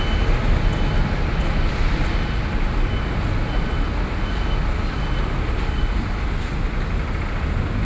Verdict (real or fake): real